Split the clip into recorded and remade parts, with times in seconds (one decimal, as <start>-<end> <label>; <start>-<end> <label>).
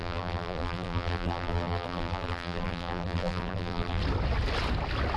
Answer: 0.0-4.0 remade; 4.0-5.2 recorded